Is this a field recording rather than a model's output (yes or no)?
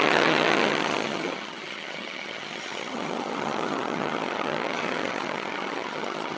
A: no